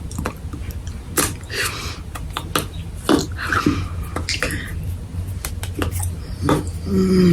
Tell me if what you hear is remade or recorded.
recorded